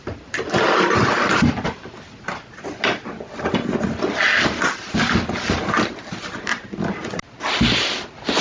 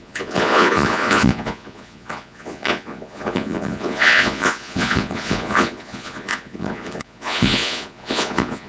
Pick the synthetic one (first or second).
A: second